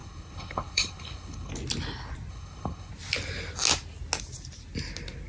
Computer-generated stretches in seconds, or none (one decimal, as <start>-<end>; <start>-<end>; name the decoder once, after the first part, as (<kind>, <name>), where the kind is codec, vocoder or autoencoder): 0.0-1.5 (codec, HILCodec); 2.3-2.9